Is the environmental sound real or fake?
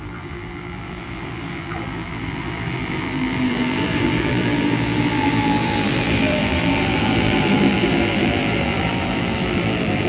fake